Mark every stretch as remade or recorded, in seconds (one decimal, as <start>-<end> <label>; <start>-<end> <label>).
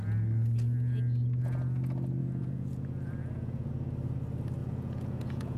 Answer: 0.0-2.2 recorded; 2.2-3.7 remade; 3.7-4.6 recorded; 4.6-5.6 remade